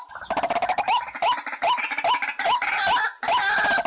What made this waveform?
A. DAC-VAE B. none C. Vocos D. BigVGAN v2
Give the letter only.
B